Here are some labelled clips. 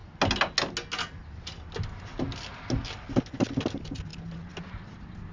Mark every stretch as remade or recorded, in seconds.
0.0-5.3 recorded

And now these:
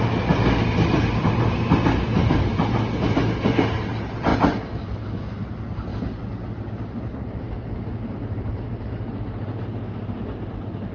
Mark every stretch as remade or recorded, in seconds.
0.0-10.9 recorded

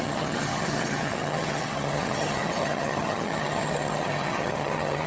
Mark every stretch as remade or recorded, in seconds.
0.0-5.1 remade

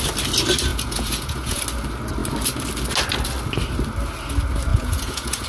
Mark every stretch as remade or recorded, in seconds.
0.0-0.7 recorded; 0.7-1.6 remade; 1.6-4.7 recorded; 4.7-5.5 remade

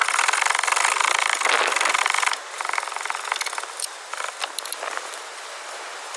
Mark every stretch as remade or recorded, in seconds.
0.0-6.2 recorded

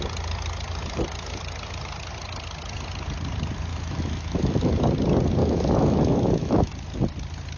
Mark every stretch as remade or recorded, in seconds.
0.0-3.7 recorded; 3.7-4.7 remade; 4.7-5.4 recorded; 5.4-6.7 remade; 6.7-7.6 recorded

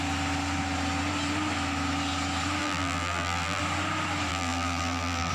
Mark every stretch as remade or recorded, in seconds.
0.0-2.6 recorded; 2.6-3.6 remade; 3.6-4.3 recorded; 4.3-5.3 remade